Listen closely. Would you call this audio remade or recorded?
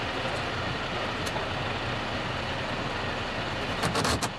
recorded